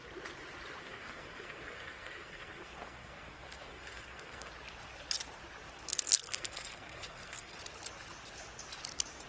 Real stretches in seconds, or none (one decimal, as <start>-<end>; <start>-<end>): 0.0-0.8; 4.5-5.9; 7.5-9.3